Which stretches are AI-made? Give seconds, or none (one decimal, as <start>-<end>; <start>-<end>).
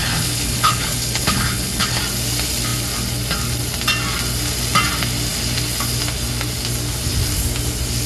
0.0-2.0